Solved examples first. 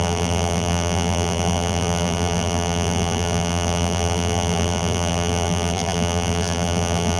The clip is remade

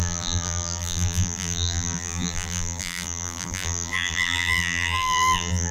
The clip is remade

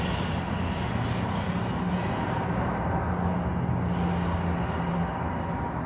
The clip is recorded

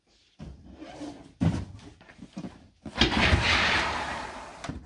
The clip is remade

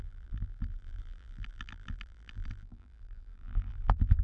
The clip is remade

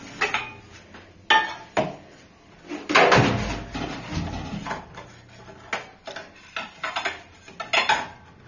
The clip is recorded